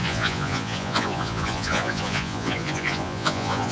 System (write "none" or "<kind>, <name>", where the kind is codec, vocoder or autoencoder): vocoder, Vocos